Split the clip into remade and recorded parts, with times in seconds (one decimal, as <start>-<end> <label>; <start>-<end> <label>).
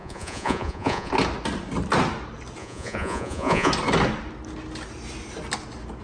0.0-1.1 remade; 1.1-2.6 recorded; 2.6-3.7 remade; 3.7-6.0 recorded